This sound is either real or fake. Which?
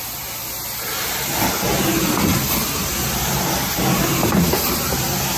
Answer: real